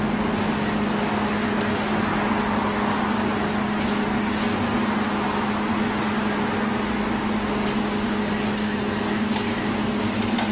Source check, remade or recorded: recorded